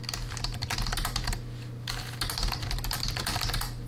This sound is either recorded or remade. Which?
recorded